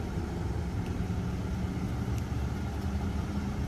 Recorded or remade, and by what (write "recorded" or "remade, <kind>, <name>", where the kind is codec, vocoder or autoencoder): recorded